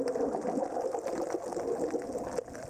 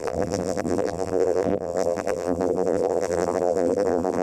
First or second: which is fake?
second